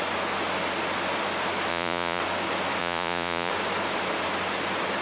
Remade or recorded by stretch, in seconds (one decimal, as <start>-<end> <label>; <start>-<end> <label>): 0.0-1.7 recorded; 1.7-2.2 remade; 2.2-2.8 recorded; 2.8-3.5 remade; 3.5-5.0 recorded